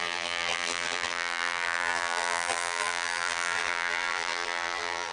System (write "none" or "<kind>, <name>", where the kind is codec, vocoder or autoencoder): vocoder, BigVGAN v2